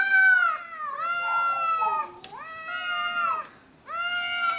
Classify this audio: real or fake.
real